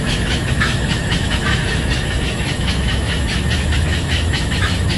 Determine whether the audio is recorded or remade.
remade